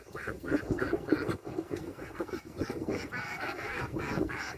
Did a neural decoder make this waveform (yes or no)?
yes